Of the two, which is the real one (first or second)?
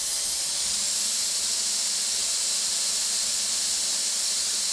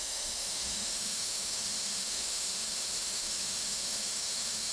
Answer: first